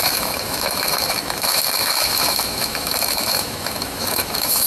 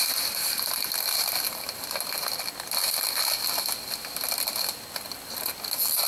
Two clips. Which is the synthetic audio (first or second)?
first